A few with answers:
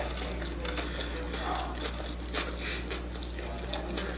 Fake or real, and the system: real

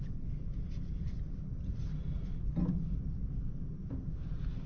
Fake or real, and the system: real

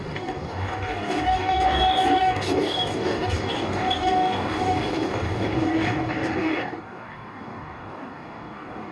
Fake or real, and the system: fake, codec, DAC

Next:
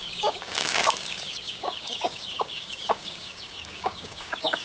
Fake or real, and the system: fake, codec, DAC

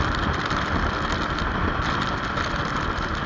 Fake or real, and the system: real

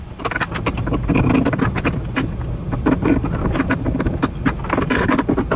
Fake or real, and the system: real